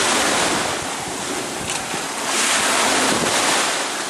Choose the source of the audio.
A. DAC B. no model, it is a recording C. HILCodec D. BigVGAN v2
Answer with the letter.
B